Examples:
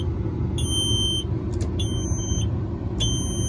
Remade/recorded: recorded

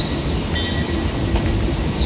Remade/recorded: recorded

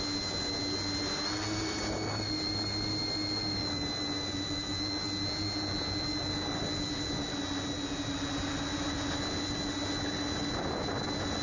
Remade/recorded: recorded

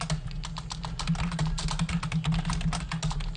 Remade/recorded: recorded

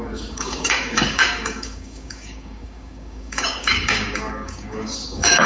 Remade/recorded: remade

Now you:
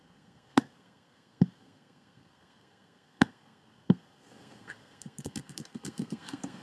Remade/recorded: remade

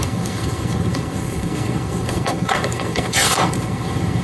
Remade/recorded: remade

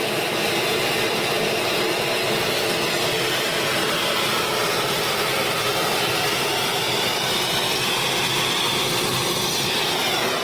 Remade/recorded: recorded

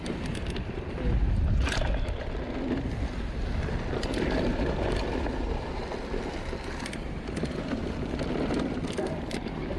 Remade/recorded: recorded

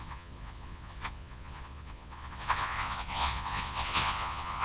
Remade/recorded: remade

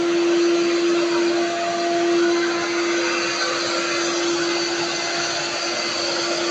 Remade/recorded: recorded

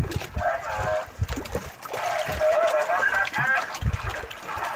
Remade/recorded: recorded